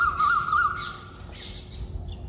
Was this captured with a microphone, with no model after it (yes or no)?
yes